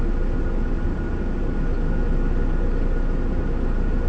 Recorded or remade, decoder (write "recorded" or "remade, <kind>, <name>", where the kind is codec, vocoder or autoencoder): recorded